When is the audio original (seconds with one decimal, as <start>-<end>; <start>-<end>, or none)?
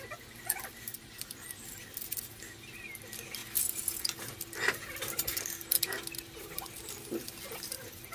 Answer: 0.0-8.1